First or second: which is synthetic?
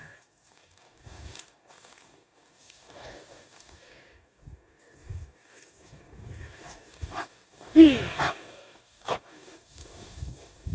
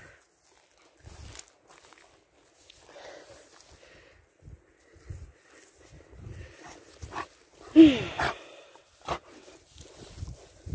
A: first